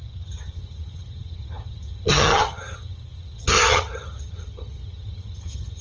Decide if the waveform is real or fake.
fake